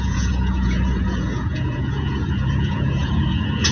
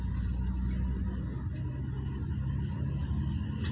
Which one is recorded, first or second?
second